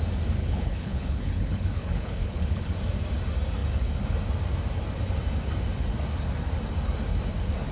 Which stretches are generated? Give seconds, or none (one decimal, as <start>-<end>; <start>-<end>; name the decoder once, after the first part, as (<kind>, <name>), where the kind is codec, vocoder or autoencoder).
0.4-2.7 (codec, HILCodec)